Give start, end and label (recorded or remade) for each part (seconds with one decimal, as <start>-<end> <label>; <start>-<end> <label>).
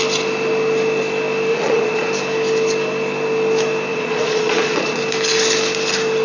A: 0.0-1.5 recorded; 1.5-2.1 remade; 2.1-3.9 recorded; 3.9-5.0 remade; 5.0-6.2 recorded